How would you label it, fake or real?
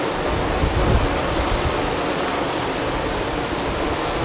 real